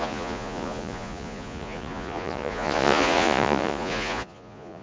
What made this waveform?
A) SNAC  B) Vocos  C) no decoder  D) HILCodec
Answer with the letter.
B